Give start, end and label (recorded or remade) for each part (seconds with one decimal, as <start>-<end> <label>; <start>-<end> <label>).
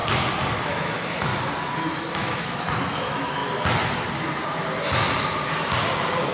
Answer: 0.0-0.6 recorded; 0.6-1.3 remade; 1.3-2.1 recorded; 2.1-3.4 remade; 3.4-6.3 recorded